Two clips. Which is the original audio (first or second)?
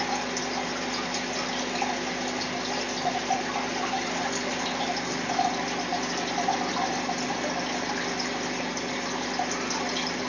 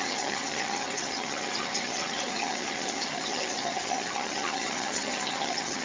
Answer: first